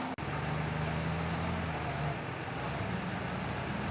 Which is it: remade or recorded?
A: recorded